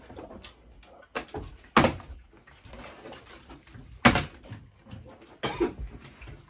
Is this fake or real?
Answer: real